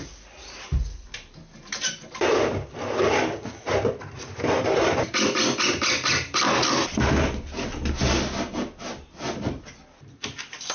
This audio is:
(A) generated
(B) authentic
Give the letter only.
B